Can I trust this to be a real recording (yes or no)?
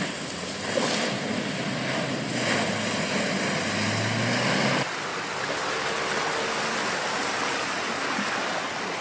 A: yes